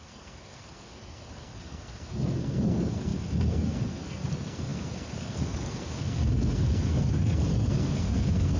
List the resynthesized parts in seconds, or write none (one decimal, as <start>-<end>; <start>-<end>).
0.0-8.6